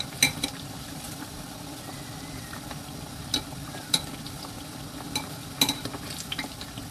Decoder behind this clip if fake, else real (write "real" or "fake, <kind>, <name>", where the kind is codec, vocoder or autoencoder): fake, vocoder, BigVGAN v2